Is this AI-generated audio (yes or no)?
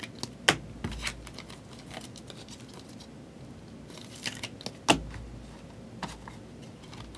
no